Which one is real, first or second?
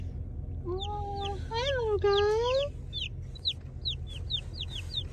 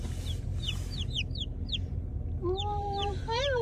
first